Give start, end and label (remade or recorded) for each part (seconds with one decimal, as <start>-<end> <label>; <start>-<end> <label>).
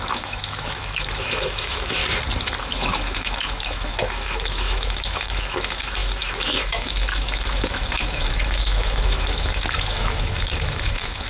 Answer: 0.0-2.0 remade; 2.0-2.6 recorded; 2.6-11.3 remade